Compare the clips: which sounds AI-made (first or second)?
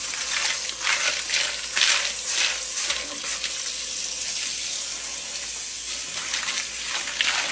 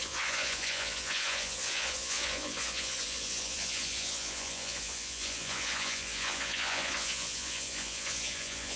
second